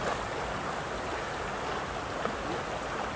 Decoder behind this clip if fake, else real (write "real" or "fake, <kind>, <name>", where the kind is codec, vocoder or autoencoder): real